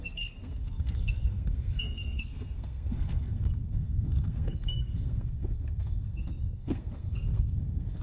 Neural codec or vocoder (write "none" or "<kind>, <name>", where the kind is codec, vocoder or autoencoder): codec, SNAC